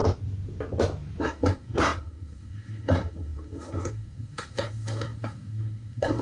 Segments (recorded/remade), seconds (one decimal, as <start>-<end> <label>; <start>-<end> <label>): 0.0-1.2 recorded; 1.2-6.2 remade

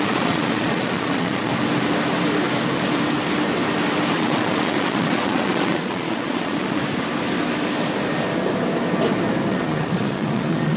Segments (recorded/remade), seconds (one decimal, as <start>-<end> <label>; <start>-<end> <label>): 0.0-1.5 remade; 1.5-4.1 recorded; 4.1-6.8 remade; 6.8-9.5 recorded; 9.5-10.8 remade

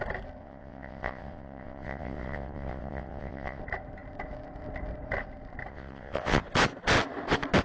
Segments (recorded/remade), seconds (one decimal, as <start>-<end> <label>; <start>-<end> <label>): 0.0-0.4 recorded; 0.4-3.6 remade; 3.6-5.7 recorded; 5.7-6.4 remade; 6.4-7.6 recorded

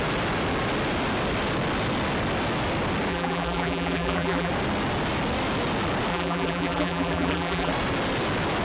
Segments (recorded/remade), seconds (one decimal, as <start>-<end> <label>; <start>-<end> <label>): 0.0-3.1 recorded; 3.1-4.5 remade; 4.5-6.1 recorded; 6.1-7.7 remade; 7.7-8.6 recorded